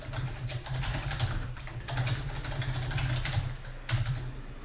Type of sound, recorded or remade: recorded